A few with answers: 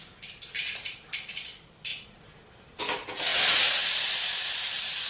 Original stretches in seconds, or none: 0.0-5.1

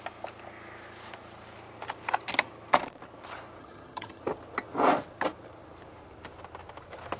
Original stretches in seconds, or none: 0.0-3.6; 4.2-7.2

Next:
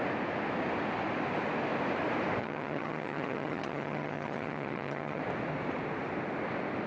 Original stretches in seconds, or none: 0.0-2.4; 5.2-6.9

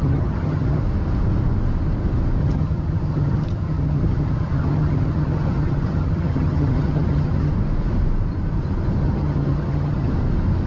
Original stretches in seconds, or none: 0.8-2.4; 7.5-9.0; 10.1-10.7

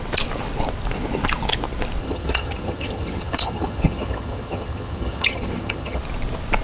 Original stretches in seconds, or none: 0.0-2.0; 6.0-6.6

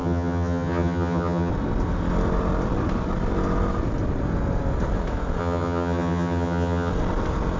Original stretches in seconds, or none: 1.5-5.4; 6.9-7.6

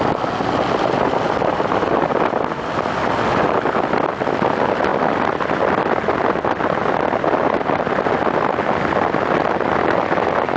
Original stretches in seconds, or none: 0.0-10.6

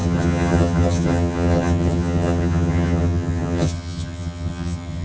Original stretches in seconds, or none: none